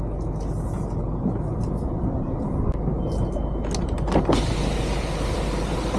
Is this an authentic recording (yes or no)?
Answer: yes